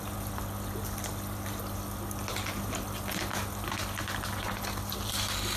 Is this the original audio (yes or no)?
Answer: yes